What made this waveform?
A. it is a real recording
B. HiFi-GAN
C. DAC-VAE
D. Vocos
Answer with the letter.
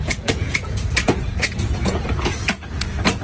D